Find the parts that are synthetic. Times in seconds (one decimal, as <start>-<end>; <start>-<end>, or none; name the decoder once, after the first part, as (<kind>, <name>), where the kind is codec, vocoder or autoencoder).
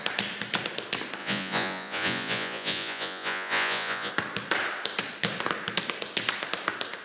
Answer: 1.2-4.1 (vocoder, Vocos)